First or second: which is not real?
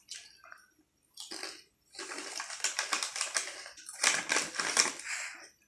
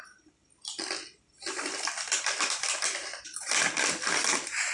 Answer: second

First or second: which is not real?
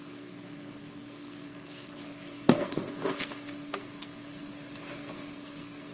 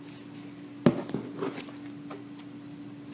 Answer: first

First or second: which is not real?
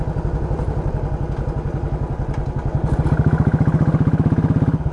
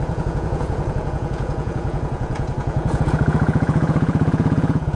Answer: second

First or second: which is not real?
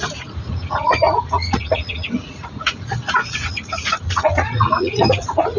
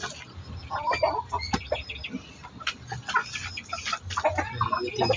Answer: first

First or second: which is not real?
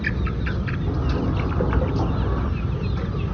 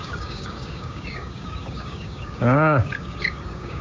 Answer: second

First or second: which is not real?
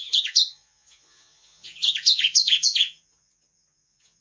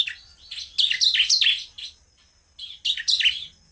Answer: first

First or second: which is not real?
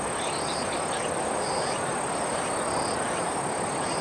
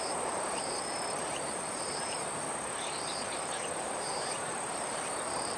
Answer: second